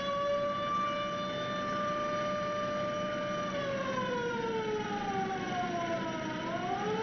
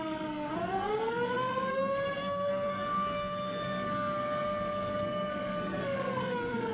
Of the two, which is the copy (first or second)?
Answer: second